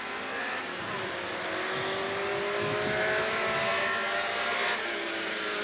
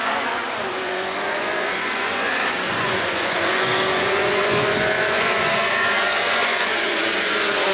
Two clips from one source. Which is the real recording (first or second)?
first